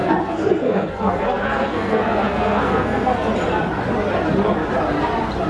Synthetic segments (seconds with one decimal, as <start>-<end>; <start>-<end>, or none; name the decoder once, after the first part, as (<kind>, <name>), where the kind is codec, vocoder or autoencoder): 0.0-3.3 (codec, SNAC)